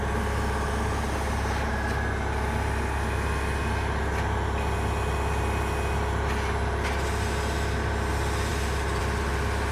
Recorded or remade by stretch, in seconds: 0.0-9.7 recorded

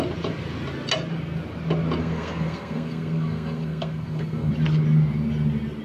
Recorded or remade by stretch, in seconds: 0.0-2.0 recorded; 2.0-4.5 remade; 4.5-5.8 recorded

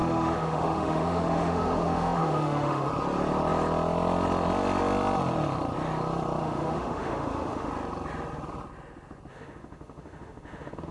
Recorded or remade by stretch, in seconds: 0.0-2.9 remade; 2.9-6.4 recorded; 6.4-7.7 remade; 7.7-9.3 recorded; 9.3-10.9 remade

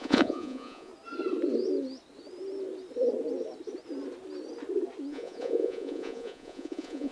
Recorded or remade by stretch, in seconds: 0.0-0.9 remade; 0.9-5.1 recorded; 5.1-7.1 remade